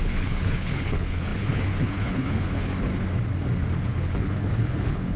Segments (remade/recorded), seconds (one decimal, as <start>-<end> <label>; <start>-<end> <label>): 0.0-2.9 remade; 2.9-3.8 recorded; 3.8-5.2 remade